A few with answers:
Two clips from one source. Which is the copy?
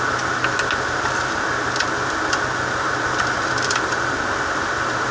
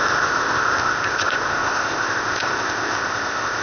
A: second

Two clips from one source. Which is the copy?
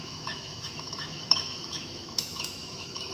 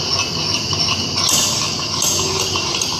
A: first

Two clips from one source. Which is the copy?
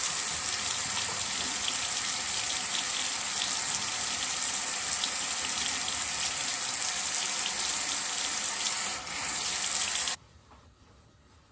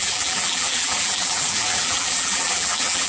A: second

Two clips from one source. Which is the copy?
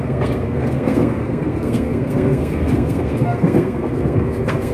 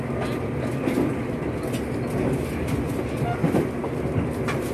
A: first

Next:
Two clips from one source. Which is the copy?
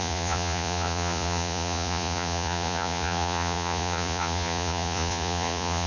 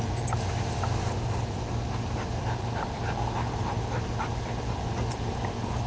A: first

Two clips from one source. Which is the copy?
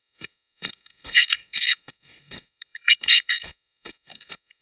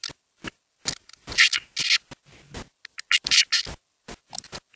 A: first